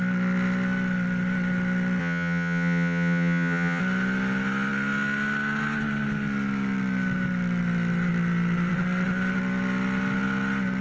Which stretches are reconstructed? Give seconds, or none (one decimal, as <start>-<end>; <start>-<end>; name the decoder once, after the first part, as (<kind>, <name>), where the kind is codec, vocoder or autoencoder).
2.0-3.8 (vocoder, HiFi-GAN)